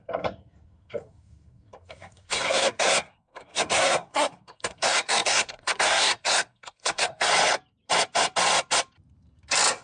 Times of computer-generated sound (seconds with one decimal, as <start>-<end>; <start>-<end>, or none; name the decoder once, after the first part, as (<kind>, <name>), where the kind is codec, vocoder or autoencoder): 0.0-7.3 (codec, SNAC)